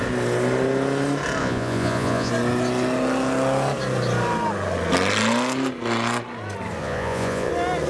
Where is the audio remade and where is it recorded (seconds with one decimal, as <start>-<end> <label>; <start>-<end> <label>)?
0.0-1.4 recorded; 1.4-2.3 remade; 2.3-6.8 recorded; 6.8-7.5 remade; 7.5-7.9 recorded